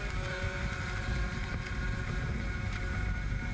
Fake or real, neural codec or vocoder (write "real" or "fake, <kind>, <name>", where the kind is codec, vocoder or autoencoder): fake, vocoder, BigVGAN v2